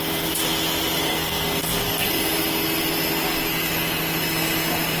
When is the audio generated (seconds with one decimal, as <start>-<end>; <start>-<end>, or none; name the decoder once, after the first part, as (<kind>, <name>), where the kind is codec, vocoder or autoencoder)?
1.0-1.6 (codec, SNAC)

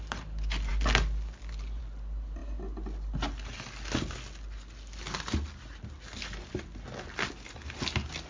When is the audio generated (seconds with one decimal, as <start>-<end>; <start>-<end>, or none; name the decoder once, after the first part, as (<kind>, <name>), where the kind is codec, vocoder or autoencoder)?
none